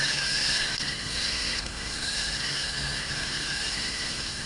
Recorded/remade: remade